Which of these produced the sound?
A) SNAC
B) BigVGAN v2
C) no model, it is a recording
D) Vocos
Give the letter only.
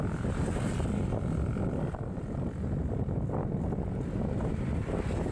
C